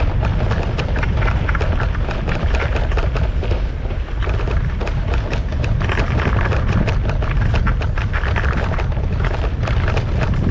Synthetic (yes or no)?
yes